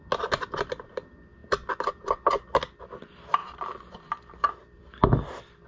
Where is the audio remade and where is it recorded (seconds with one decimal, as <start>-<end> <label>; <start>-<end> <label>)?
0.0-3.4 recorded; 3.4-4.9 remade; 4.9-5.7 recorded